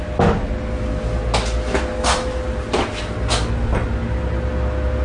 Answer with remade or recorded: recorded